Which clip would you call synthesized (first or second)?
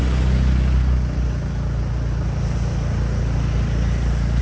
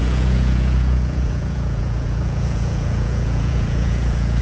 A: second